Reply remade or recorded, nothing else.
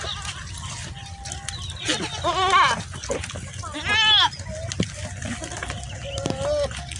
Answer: recorded